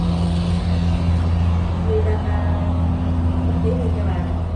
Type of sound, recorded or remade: recorded